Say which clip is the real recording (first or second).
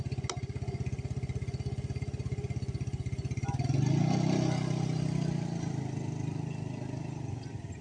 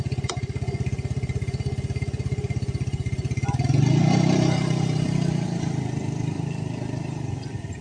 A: first